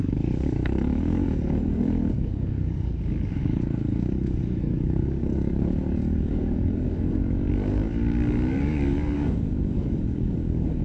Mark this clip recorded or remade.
remade